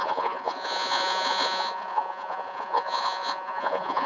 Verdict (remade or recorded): remade